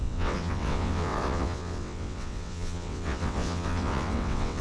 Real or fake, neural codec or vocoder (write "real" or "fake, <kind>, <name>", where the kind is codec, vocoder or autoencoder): fake, vocoder, WaveNeXt